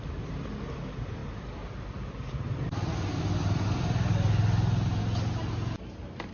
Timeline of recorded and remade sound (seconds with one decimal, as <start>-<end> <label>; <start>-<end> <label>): 0.0-6.3 recorded